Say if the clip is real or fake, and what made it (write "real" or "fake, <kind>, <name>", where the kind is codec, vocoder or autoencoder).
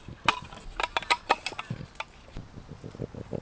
real